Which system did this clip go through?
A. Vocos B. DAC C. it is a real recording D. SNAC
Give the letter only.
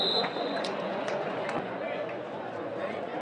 A